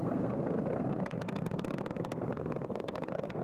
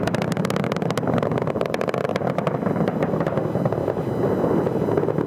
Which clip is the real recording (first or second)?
second